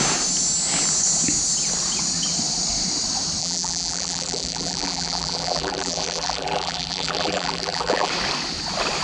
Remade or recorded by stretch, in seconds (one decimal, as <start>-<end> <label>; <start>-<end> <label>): 0.0-3.4 recorded; 3.4-8.1 remade; 8.1-9.0 recorded